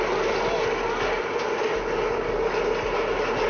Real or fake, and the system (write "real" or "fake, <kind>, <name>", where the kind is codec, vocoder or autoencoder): real